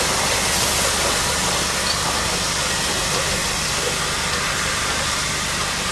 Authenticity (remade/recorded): recorded